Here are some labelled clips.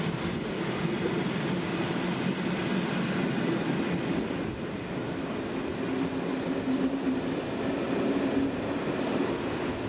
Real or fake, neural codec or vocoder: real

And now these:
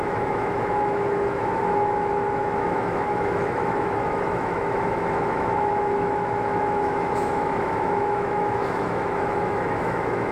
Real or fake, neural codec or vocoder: fake, autoencoder, DAC-VAE